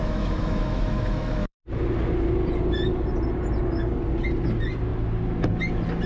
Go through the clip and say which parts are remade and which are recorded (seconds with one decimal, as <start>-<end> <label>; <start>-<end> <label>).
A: 0.0-1.6 remade; 1.6-6.1 recorded

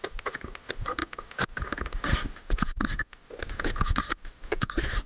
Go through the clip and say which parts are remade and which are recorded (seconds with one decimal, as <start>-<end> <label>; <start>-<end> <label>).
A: 0.0-5.1 recorded

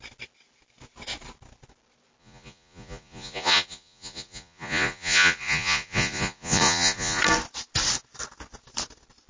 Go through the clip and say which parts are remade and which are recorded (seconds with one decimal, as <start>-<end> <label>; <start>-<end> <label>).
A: 0.0-2.2 recorded; 2.2-7.2 remade; 7.2-9.3 recorded

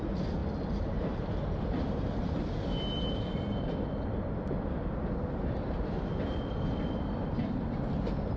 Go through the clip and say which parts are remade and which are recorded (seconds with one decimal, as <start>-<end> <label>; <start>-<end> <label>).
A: 0.0-8.4 recorded

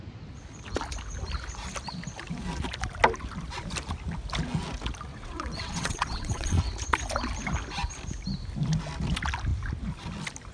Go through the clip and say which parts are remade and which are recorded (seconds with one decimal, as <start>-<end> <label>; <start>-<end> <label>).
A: 0.0-5.1 recorded; 5.1-6.6 remade; 6.6-10.5 recorded

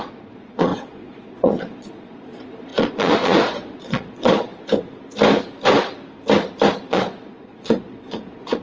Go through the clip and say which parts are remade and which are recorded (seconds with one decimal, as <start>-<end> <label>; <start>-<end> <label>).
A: 0.0-4.5 remade; 4.5-6.9 recorded; 6.9-8.6 remade

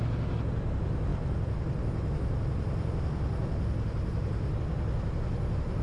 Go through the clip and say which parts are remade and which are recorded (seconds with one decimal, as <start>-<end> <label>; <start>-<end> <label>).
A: 0.0-5.8 recorded

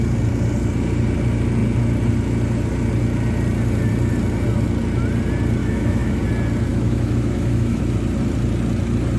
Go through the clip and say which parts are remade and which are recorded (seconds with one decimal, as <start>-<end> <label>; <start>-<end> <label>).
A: 0.0-5.6 recorded; 5.6-6.2 remade; 6.2-6.7 recorded; 6.7-7.8 remade; 7.8-9.2 recorded